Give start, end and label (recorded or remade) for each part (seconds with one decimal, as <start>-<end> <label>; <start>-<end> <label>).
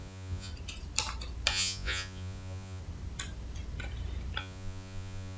0.0-0.5 remade; 0.5-1.5 recorded; 1.5-2.8 remade; 2.8-4.4 recorded; 4.4-5.4 remade